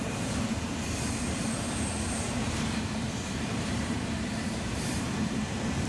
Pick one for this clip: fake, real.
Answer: fake